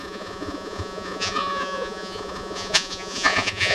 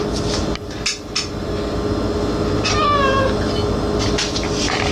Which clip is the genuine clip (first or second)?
second